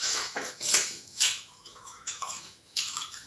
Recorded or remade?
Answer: remade